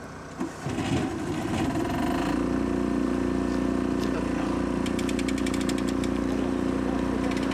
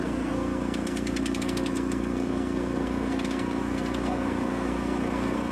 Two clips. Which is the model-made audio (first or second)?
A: second